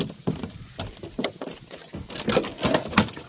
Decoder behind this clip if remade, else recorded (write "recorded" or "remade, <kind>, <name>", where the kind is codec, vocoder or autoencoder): recorded